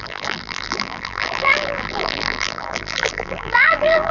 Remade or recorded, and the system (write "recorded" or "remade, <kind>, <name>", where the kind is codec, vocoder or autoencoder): remade, vocoder, BigVGAN v2